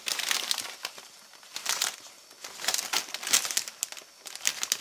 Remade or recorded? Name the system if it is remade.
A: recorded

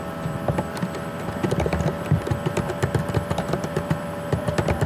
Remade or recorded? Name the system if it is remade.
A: remade, vocoder, BigVGAN v2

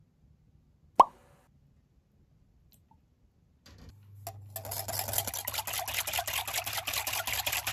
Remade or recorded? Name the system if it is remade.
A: recorded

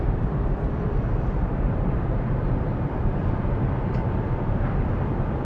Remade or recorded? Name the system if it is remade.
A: remade, vocoder, BigVGAN v2